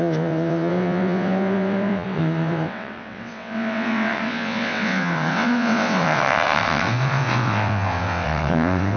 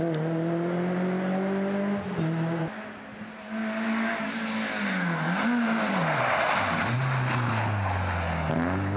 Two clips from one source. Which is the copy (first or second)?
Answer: first